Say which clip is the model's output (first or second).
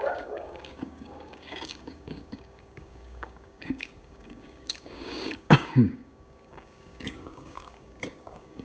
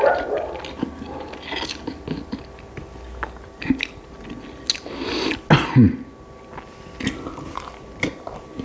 first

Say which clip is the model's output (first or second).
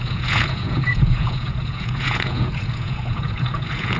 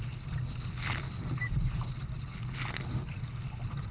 first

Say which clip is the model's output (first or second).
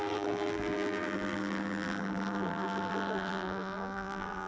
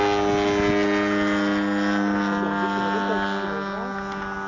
first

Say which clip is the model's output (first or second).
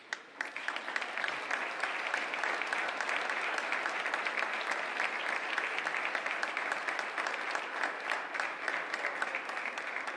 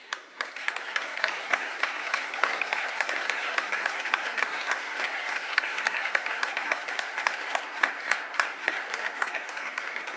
second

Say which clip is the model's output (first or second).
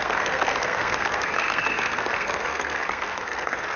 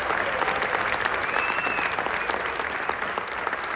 first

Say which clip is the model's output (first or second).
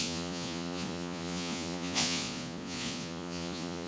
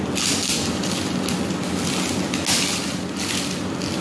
first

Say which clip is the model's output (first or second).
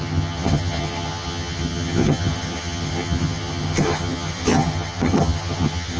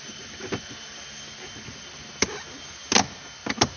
first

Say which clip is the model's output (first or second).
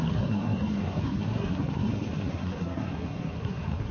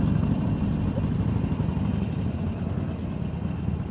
first